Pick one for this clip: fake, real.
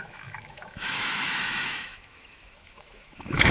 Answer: fake